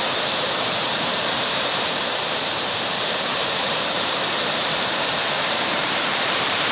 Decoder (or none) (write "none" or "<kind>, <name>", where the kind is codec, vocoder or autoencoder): vocoder, BigVGAN v2